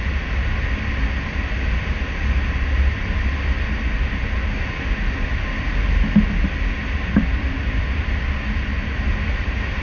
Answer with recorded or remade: recorded